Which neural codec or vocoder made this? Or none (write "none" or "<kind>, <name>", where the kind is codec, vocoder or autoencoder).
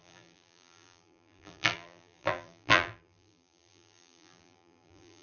vocoder, BigVGAN v2